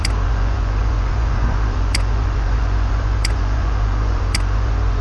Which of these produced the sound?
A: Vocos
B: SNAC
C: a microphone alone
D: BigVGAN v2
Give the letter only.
A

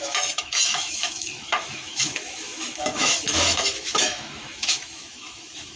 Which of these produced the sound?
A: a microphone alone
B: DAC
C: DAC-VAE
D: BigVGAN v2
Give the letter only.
C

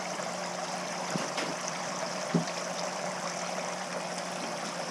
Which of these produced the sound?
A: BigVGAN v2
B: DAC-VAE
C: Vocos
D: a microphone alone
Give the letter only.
A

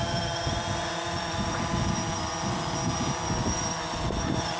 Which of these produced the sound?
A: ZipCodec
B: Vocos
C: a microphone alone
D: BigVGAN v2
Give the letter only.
C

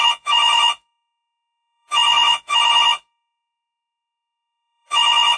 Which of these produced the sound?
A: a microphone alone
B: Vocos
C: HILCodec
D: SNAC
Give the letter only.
B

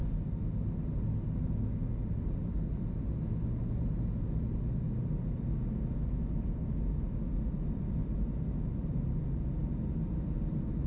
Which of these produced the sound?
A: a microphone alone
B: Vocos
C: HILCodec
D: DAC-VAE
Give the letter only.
A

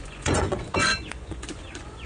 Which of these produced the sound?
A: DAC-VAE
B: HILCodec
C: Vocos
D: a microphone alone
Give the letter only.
C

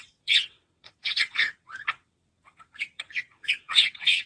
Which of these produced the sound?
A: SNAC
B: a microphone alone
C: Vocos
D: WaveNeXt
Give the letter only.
D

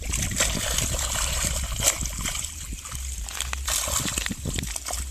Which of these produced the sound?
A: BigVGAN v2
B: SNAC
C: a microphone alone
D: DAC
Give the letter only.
C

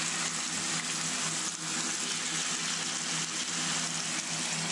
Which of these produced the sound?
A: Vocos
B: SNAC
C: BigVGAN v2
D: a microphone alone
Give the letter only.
D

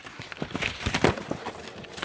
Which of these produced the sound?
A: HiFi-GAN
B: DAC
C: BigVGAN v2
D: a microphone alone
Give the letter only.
D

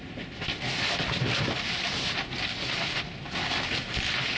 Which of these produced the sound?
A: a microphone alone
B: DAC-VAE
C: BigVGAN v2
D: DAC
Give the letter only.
A